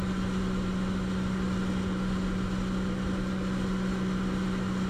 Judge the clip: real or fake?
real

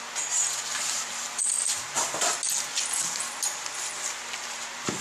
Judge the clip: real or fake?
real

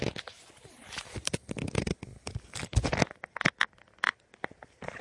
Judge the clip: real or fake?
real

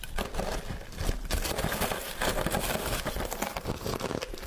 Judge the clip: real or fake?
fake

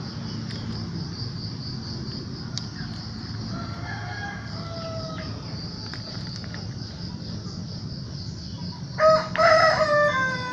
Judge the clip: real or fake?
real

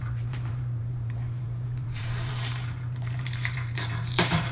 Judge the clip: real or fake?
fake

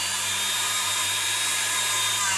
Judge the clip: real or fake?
fake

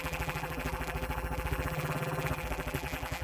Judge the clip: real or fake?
fake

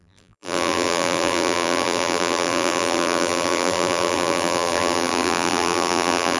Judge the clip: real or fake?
fake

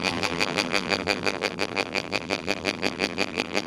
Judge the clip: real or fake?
fake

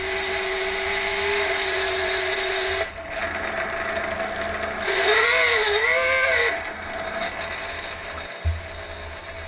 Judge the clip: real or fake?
real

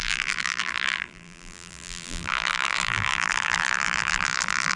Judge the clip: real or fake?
fake